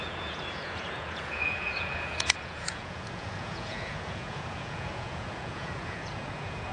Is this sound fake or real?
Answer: fake